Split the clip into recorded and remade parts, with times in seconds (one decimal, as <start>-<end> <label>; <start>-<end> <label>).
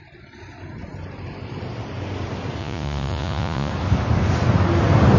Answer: 0.0-2.6 recorded; 2.6-3.7 remade; 3.7-5.2 recorded